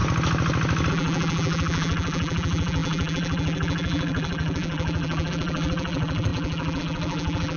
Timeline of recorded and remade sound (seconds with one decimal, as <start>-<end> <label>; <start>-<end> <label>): 0.0-0.9 recorded; 0.9-7.6 remade